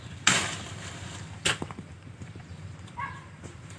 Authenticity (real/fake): fake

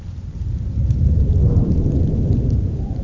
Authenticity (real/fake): fake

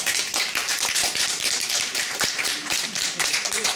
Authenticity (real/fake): fake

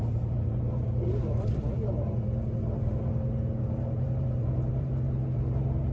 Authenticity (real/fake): fake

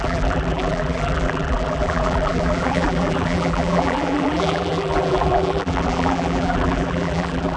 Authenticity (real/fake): fake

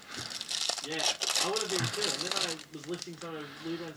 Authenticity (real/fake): real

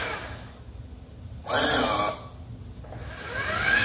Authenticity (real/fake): real